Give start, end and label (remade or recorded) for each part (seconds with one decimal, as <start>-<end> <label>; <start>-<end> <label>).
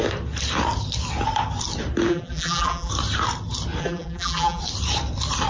0.0-2.1 recorded; 2.1-2.9 remade; 2.9-3.8 recorded; 3.8-4.6 remade; 4.6-5.5 recorded